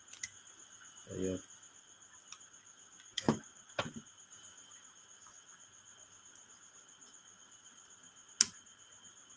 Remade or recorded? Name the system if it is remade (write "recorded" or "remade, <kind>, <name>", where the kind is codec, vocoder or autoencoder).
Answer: recorded